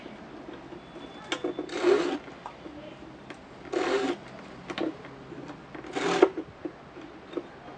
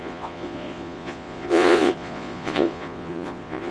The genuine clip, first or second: first